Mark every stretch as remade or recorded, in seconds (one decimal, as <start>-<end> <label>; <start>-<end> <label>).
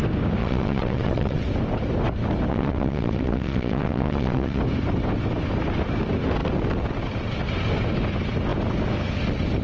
0.0-0.4 recorded; 0.4-1.4 remade; 1.4-2.5 recorded; 2.5-4.6 remade; 4.6-9.6 recorded